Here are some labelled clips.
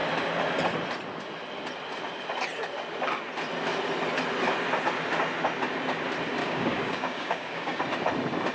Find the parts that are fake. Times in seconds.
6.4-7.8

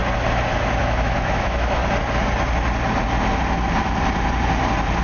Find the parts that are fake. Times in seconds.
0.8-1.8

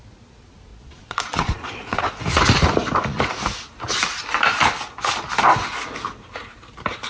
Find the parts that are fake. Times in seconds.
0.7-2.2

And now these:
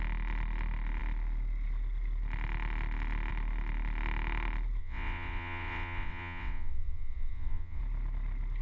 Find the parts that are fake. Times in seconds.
4.8-7.8